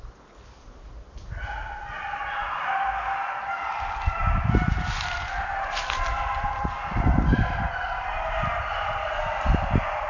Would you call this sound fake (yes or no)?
no